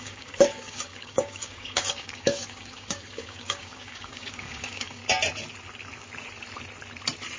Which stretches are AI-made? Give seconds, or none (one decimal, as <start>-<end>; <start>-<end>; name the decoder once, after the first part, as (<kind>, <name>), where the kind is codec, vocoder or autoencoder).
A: 0.0-5.0 (codec, DAC)